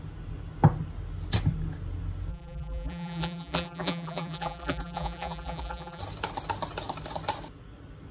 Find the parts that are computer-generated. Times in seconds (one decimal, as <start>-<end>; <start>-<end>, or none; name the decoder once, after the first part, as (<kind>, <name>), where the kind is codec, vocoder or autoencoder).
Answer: 2.3-6.0 (vocoder, BigVGAN v2)